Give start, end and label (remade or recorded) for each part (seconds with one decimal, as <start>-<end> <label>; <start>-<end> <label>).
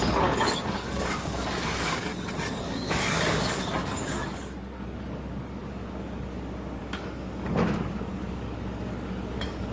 0.0-2.1 remade; 2.1-2.6 recorded; 2.6-9.7 remade